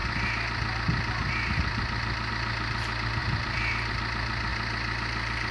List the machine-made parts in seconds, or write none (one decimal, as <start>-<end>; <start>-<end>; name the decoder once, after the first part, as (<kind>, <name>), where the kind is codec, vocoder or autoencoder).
none